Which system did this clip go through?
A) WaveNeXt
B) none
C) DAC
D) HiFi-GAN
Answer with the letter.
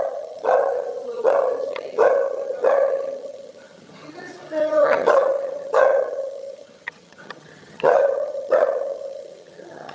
D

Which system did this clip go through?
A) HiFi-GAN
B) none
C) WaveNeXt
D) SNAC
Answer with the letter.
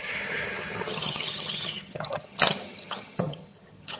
A